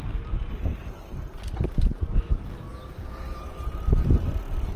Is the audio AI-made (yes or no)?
no